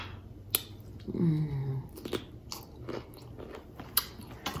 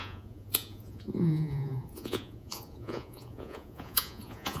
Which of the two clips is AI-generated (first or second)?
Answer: second